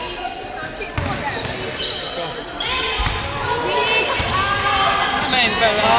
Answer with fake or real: real